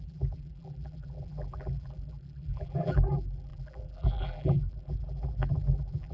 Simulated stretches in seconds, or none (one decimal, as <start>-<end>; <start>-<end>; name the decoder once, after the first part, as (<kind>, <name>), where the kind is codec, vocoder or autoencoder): 0.0-6.1 (vocoder, BigVGAN v2)